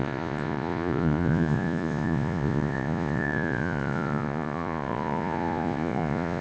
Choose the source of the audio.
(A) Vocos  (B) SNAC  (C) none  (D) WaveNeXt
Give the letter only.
A